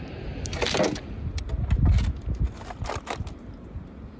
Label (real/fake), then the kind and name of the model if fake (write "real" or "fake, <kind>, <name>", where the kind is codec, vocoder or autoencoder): real